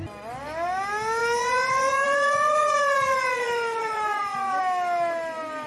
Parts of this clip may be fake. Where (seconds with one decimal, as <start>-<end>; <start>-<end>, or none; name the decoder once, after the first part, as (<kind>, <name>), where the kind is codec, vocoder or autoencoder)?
1.2-4.6 (vocoder, Vocos)